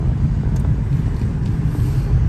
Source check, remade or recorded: recorded